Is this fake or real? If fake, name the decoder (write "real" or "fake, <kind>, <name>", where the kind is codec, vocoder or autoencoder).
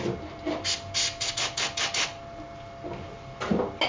real